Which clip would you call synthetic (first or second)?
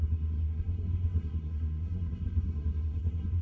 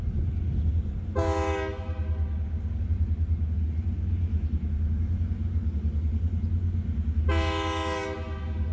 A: first